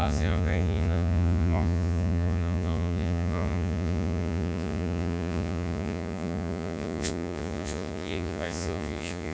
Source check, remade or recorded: remade